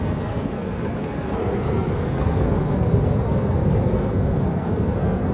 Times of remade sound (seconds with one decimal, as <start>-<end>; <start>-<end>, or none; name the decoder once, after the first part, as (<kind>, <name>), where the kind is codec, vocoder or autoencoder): 0.0-5.3 (codec, SNAC)